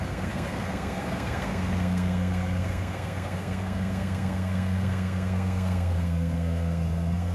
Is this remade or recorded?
remade